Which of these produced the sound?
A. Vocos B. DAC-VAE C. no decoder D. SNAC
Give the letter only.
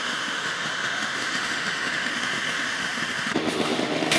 B